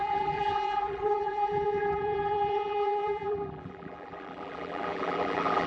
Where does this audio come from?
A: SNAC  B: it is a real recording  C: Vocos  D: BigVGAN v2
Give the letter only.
D